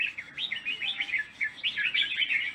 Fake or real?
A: real